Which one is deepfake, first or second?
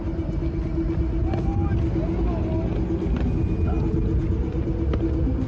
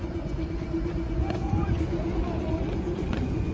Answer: second